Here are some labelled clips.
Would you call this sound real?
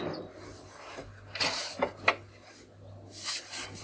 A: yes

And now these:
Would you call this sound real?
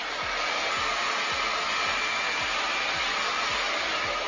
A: yes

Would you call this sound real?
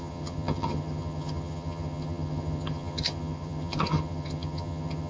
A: no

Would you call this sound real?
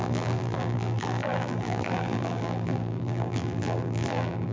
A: no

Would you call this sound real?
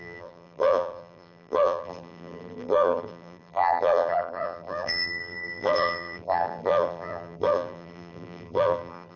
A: no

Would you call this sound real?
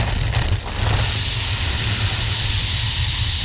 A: yes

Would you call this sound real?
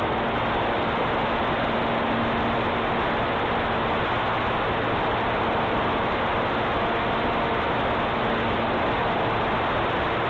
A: yes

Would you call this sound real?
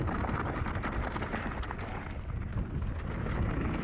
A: yes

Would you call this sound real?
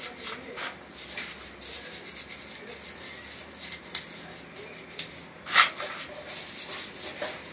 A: yes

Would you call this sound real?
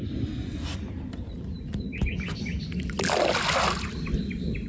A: yes